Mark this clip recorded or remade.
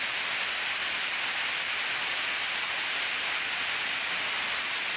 recorded